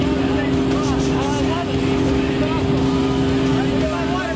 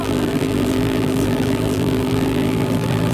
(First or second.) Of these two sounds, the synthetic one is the second